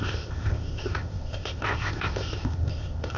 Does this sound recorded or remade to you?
remade